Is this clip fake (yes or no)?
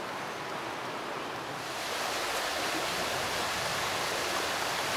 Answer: no